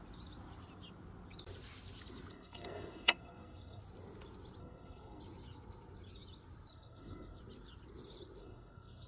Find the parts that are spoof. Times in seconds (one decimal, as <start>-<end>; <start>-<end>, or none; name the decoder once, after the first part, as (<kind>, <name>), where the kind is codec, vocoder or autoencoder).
2.3-3.8 (codec, SNAC); 4.6-5.2; 6.7-7.4; 8.4-9.1